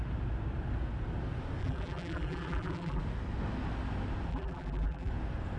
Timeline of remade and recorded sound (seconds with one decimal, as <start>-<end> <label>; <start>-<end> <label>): 0.0-1.6 recorded; 1.6-3.0 remade; 3.0-4.3 recorded; 4.3-5.1 remade; 5.1-5.6 recorded